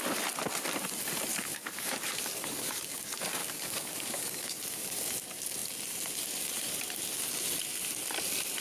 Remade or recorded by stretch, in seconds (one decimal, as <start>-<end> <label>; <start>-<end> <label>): 0.0-1.3 recorded; 1.3-3.0 remade; 3.0-3.4 recorded; 3.4-5.0 remade; 5.0-8.6 recorded